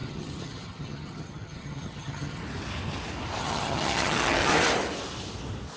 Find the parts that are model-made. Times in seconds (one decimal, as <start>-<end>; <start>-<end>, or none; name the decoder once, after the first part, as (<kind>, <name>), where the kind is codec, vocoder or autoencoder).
0.0-2.4 (vocoder, HiFi-GAN); 3.4-4.5